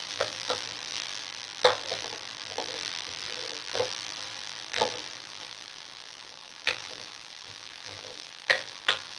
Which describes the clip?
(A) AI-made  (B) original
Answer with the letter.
A